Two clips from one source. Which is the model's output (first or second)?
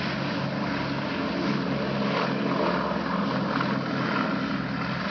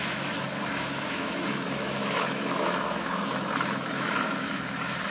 second